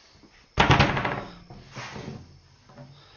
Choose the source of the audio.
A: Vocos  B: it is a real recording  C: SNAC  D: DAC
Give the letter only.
B